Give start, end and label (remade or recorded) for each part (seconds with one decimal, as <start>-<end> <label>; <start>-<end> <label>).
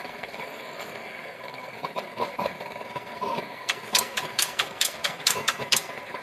0.0-6.2 remade